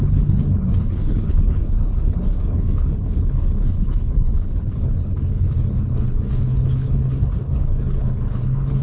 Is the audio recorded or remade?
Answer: remade